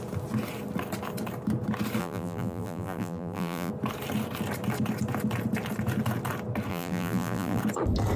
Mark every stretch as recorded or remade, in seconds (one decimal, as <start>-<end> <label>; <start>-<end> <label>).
0.0-2.0 recorded; 2.0-3.7 remade; 3.7-6.7 recorded; 6.7-7.6 remade; 7.6-8.2 recorded